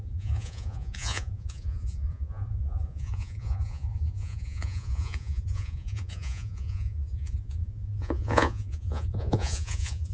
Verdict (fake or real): fake